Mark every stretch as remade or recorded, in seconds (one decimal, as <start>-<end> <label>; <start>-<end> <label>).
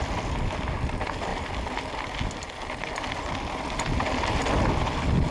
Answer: 0.0-5.3 recorded